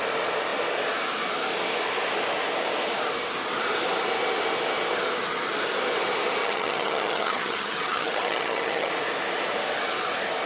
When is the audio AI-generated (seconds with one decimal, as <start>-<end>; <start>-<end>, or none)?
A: 6.4-8.9